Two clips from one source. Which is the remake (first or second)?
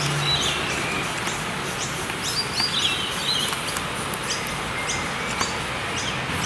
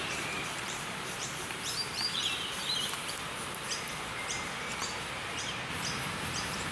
second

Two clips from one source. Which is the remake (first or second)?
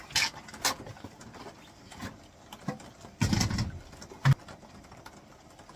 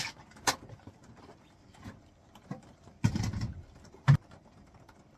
second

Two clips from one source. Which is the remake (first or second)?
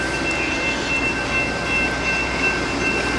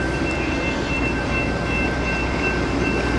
second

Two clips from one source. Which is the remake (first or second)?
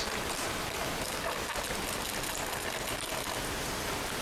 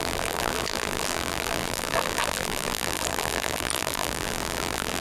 second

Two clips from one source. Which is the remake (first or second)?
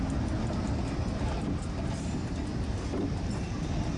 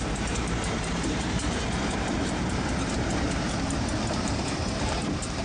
second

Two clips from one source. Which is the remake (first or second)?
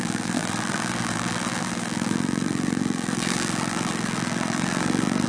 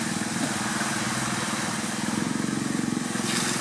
first